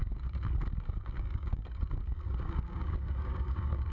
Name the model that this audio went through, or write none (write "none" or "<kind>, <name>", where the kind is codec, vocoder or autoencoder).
codec, DAC